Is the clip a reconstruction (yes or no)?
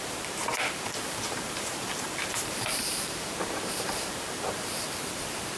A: yes